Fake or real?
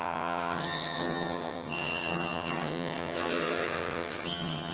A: fake